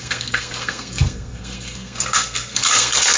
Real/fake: fake